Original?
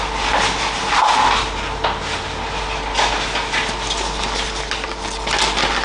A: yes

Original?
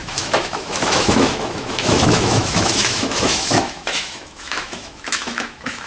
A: no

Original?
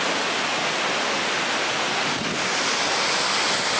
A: yes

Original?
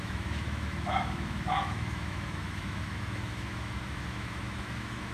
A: no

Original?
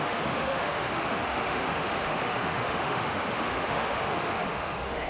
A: no